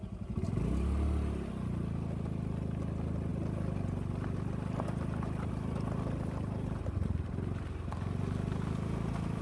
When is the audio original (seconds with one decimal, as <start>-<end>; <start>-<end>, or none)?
0.0-9.4